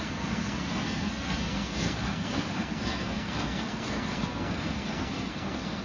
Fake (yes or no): yes